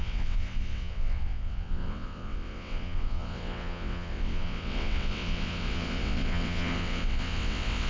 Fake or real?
fake